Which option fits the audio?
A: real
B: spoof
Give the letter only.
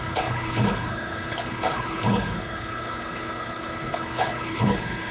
B